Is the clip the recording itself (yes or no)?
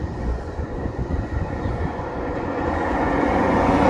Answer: no